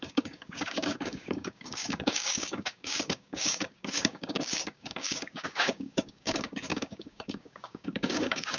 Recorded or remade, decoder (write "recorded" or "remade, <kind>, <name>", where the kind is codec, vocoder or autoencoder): remade, codec, DAC